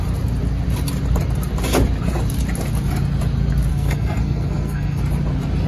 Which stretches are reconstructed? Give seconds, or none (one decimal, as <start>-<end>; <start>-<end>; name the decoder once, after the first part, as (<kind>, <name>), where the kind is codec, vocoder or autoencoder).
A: 3.7-5.0 (codec, SNAC)

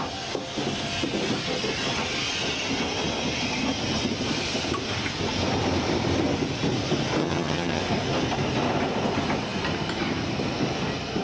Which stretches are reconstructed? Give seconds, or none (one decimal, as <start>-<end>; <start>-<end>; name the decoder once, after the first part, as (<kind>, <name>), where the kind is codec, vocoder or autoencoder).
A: 7.2-7.8 (vocoder, HiFi-GAN)

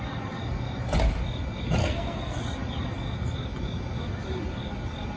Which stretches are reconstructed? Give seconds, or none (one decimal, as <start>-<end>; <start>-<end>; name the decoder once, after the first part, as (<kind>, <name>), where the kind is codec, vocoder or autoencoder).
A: 1.8-2.4 (codec, SNAC)

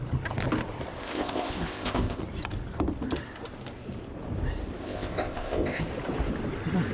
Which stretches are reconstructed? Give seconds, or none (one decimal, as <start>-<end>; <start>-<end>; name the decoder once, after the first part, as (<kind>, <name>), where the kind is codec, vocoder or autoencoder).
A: 1.0-2.2 (codec, ZipCodec); 4.8-5.8

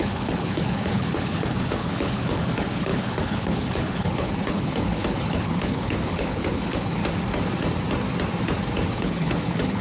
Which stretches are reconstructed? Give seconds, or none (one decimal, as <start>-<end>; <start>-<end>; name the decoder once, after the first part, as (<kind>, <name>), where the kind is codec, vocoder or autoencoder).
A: 0.0-7.0 (codec, HILCodec); 8.9-9.8